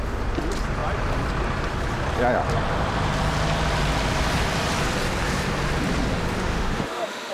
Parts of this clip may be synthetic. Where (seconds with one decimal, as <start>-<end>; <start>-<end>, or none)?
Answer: 6.5-7.3